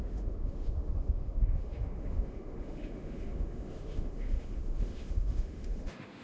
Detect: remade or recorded remade